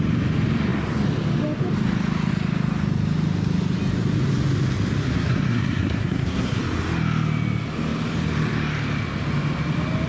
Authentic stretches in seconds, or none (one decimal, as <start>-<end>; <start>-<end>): 0.0-5.0; 6.6-10.1